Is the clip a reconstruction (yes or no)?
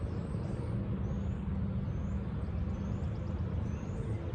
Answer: no